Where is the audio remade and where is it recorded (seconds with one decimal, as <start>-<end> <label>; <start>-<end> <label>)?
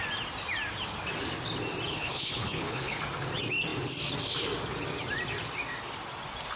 0.0-1.9 recorded; 1.9-3.0 remade; 3.0-6.6 recorded